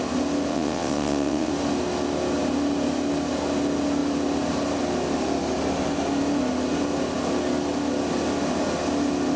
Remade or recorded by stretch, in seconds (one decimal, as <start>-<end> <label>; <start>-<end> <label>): 0.0-0.5 recorded; 0.5-1.5 remade; 1.5-9.4 recorded